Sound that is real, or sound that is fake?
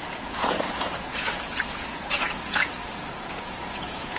fake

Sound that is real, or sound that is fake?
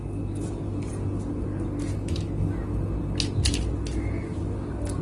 real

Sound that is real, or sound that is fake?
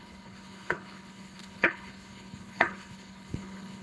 fake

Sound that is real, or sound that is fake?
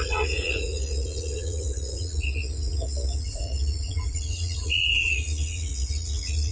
fake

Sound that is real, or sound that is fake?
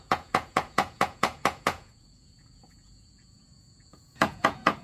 fake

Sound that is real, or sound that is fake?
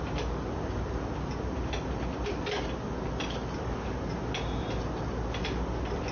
real